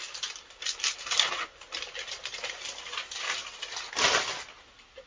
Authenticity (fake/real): real